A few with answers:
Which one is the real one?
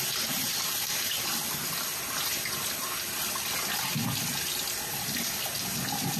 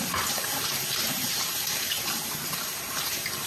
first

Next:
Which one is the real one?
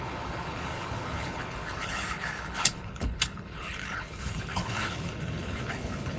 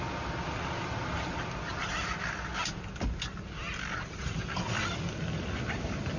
second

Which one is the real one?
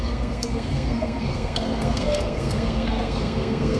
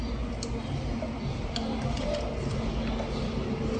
second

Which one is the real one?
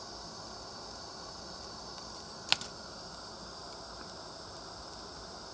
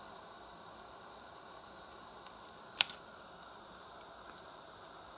first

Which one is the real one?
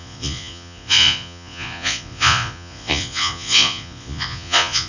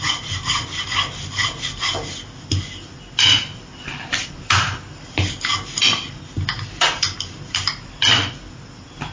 second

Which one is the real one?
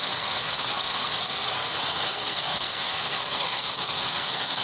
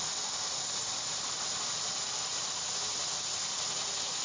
second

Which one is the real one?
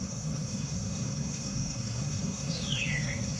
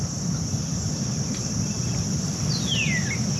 second